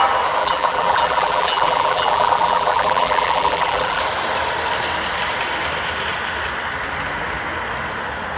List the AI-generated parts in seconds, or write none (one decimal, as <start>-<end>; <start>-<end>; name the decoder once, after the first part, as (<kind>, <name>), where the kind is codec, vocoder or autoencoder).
0.4-4.0 (vocoder, BigVGAN v2)